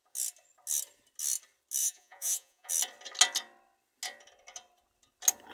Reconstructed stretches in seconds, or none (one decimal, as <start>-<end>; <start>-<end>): 1.8-2.7